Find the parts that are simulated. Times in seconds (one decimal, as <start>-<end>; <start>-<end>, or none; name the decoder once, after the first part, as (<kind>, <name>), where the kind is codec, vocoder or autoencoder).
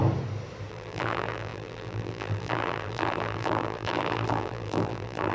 0.7-5.3 (vocoder, BigVGAN v2)